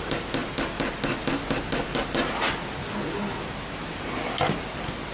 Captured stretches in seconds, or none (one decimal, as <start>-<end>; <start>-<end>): 0.0-5.1